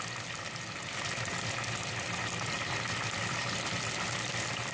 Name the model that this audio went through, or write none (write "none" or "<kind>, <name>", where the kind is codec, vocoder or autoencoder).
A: none